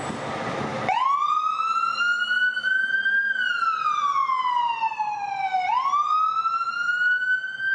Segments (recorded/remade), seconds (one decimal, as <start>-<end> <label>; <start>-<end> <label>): 0.0-7.7 recorded